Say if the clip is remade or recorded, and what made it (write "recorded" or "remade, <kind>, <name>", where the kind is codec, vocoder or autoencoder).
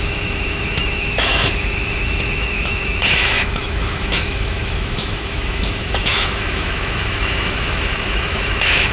remade, autoencoder, DAC-VAE